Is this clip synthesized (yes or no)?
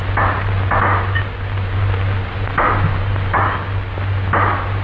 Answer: no